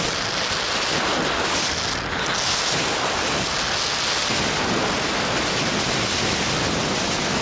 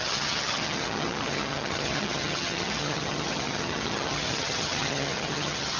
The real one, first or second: first